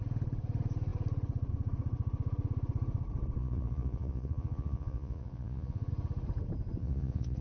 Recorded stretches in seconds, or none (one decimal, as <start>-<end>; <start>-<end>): 0.0-3.4; 5.9-6.8